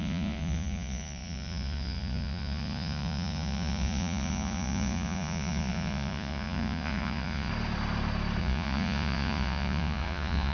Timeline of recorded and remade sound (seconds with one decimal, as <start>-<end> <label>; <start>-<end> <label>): 0.0-7.5 remade; 7.5-8.4 recorded; 8.4-10.5 remade